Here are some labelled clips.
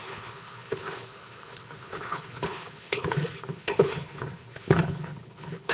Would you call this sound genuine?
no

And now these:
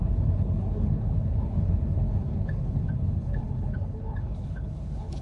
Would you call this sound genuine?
no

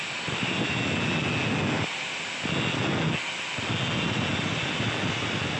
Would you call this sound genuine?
yes